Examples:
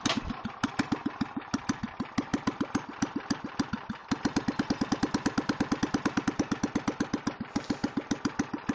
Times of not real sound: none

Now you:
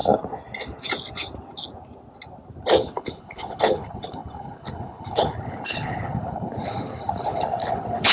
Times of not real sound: 2.7-8.1 (codec, HILCodec)

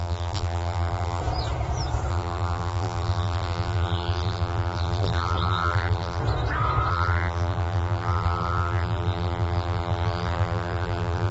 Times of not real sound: 0.0-1.2 (vocoder, BigVGAN v2); 2.1-6.2; 6.9-11.3

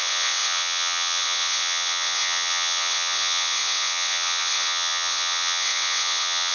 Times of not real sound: 0.0-6.5 (vocoder, WaveNeXt)